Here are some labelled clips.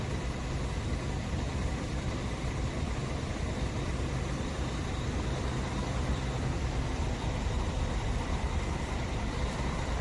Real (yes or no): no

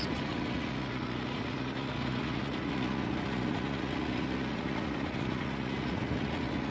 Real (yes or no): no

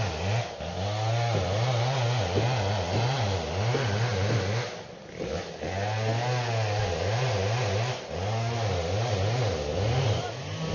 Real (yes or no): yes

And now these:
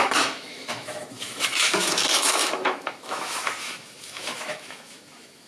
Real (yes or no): no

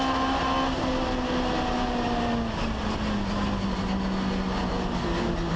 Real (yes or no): yes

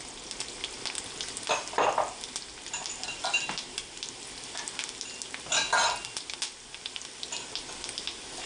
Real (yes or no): yes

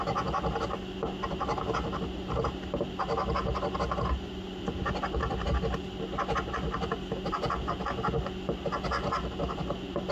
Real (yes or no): yes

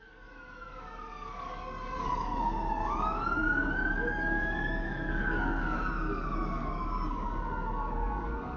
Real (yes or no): no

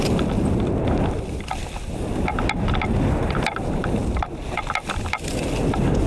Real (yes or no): yes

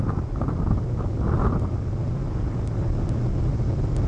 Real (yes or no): yes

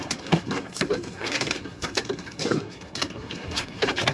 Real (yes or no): no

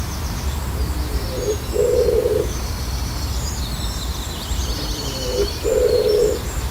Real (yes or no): no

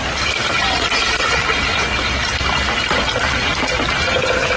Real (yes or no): no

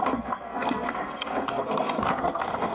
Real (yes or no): no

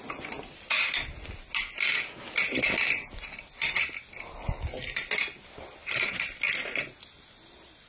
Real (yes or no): yes